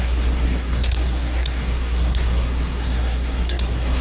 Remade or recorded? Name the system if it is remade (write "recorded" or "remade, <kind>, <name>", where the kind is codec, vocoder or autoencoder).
remade, codec, SNAC